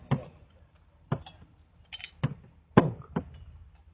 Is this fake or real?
real